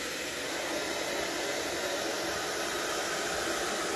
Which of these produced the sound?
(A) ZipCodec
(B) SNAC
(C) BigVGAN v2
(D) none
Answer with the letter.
D